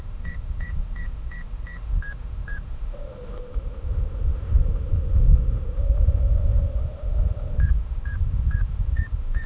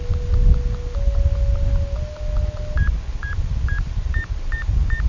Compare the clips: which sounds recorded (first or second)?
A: second